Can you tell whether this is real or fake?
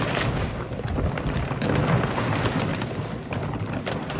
real